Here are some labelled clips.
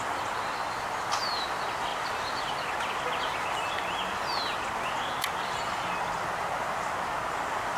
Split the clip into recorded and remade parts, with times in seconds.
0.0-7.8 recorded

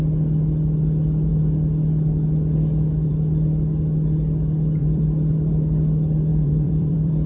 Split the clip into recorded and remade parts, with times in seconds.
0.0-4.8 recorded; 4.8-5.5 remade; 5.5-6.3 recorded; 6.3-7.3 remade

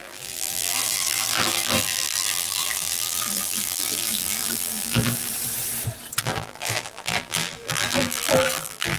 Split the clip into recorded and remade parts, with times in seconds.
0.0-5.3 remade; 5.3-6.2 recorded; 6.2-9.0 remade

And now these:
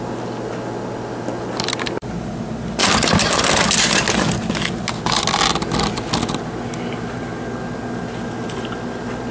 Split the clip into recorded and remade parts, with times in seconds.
0.0-9.3 recorded

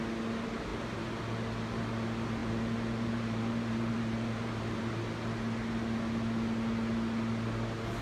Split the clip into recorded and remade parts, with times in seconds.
0.0-2.4 recorded; 2.4-5.0 remade; 5.0-8.0 recorded

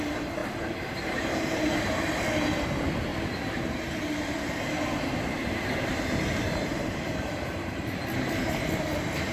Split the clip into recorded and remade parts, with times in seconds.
0.0-0.4 recorded; 0.4-1.6 remade; 1.6-3.1 recorded; 3.1-4.6 remade; 4.6-5.4 recorded; 5.4-7.9 remade; 7.9-9.3 recorded

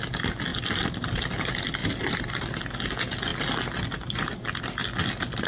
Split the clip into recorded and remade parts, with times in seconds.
0.0-1.8 recorded; 1.8-2.4 remade; 2.4-5.5 recorded

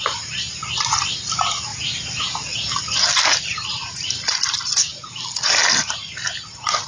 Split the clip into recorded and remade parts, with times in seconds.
0.0-1.7 remade; 1.7-3.1 recorded; 3.1-6.0 remade; 6.0-6.9 recorded